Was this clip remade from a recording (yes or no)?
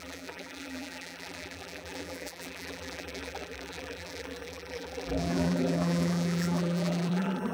yes